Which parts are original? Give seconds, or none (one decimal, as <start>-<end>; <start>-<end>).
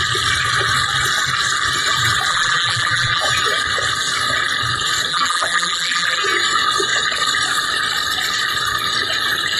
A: 0.0-2.3; 3.2-5.1; 6.2-9.6